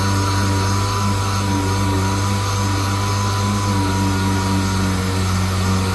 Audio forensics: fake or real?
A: real